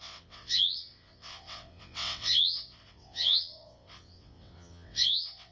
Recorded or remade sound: remade